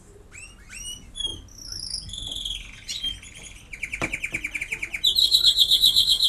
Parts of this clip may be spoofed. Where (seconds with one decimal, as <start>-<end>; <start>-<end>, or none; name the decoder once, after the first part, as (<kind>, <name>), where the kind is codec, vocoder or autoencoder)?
5.2-6.3 (codec, SNAC)